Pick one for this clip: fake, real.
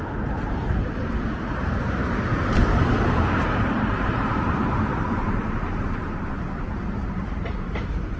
fake